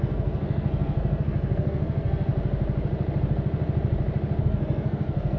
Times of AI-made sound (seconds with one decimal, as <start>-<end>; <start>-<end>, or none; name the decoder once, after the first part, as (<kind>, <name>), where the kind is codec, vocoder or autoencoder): 0.0-2.3 (codec, SNAC); 4.4-5.4